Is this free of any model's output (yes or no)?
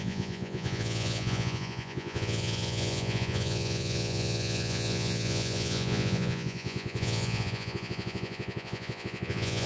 no